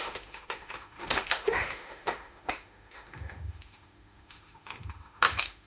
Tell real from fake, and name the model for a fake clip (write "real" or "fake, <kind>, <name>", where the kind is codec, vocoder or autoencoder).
fake, autoencoder, DAC-VAE